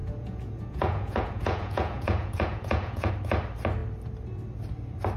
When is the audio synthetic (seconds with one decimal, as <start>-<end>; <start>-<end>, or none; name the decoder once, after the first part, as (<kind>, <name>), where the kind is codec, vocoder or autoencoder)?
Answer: 0.0-3.1 (vocoder, Vocos)